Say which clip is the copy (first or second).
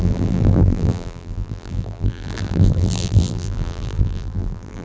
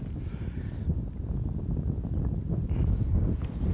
first